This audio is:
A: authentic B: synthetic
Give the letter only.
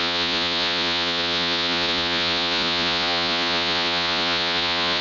B